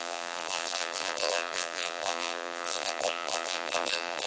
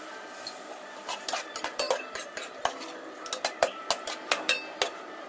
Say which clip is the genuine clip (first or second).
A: second